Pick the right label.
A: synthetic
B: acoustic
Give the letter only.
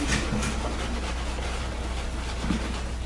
B